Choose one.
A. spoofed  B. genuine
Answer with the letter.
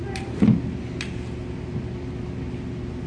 B